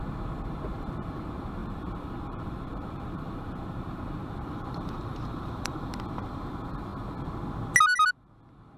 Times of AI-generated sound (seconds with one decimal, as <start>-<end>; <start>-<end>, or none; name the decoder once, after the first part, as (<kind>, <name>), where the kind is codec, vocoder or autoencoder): 1.6-5.9 (vocoder, BigVGAN v2)